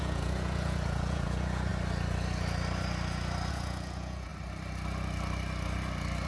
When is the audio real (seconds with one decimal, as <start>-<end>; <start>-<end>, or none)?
1.7-3.5; 4.3-6.3